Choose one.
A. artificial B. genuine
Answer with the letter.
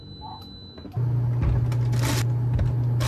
B